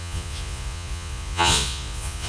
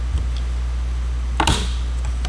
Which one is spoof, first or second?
first